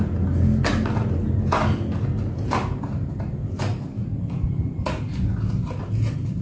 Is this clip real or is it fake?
real